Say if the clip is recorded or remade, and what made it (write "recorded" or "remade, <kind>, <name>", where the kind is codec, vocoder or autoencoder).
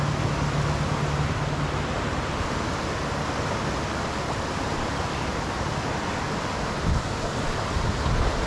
recorded